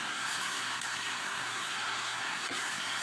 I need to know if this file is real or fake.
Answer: fake